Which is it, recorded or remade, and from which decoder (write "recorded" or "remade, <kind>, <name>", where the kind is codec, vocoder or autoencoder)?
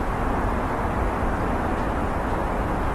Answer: recorded